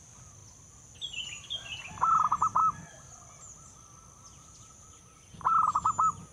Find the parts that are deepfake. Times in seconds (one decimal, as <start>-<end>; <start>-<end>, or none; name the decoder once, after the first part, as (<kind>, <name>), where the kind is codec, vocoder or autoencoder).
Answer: none